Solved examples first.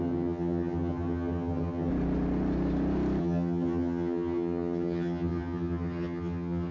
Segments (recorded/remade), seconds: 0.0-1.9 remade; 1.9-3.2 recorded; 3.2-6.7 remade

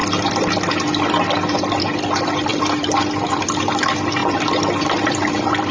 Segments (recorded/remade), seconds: 0.0-2.5 recorded; 2.5-3.4 remade; 3.4-4.2 recorded; 4.2-5.7 remade